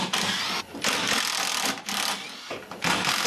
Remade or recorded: recorded